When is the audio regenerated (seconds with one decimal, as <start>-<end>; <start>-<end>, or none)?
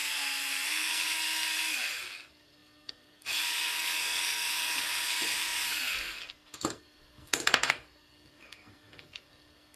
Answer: 0.0-9.8